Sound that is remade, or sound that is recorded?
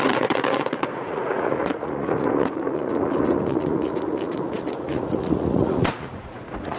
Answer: remade